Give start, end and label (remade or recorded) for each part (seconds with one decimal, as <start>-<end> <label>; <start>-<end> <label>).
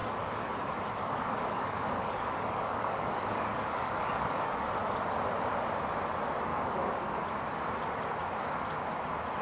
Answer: 0.0-0.5 remade; 0.5-1.0 recorded; 1.0-4.7 remade; 4.7-6.5 recorded; 6.5-7.2 remade; 7.2-9.4 recorded